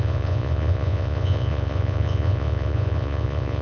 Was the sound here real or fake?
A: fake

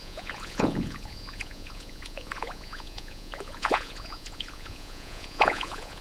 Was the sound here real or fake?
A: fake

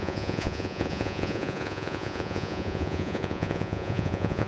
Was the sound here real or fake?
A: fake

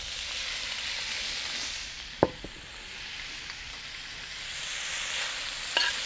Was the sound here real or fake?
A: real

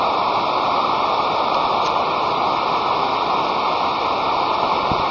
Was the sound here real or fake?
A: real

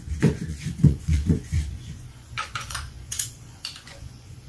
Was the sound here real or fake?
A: fake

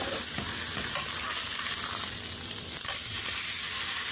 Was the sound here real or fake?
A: real